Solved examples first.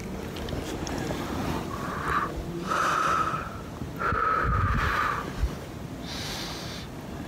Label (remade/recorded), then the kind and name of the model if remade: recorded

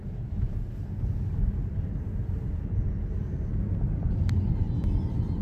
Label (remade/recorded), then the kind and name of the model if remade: recorded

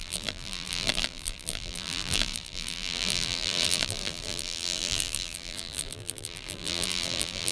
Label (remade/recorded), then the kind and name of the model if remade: remade, vocoder, BigVGAN v2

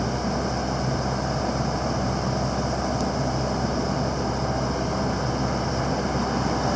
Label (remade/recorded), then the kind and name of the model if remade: recorded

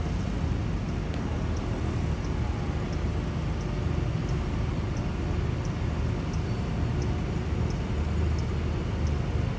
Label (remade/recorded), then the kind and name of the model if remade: recorded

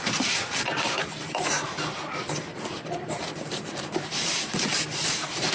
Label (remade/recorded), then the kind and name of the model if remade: remade, vocoder, BigVGAN v2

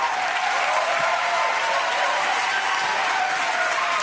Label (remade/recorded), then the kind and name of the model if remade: remade, vocoder, BigVGAN v2